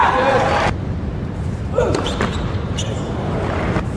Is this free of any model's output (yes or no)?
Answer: yes